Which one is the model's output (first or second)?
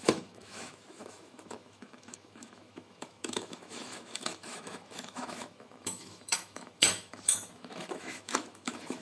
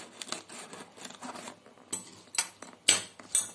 first